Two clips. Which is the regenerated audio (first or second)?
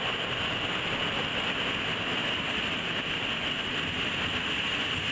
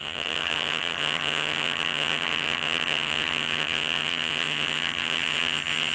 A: second